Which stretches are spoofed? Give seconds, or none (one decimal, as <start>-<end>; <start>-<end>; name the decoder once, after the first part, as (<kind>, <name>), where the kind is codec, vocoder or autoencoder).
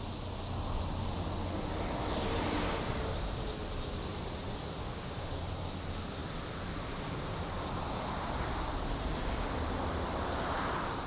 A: 4.8-5.4 (codec, DAC)